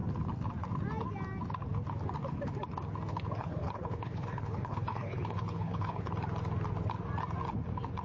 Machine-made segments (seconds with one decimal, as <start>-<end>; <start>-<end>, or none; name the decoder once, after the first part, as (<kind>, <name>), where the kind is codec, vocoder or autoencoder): 3.1-6.1 (codec, HILCodec)